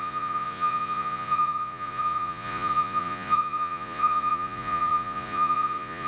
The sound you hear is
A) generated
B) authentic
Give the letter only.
A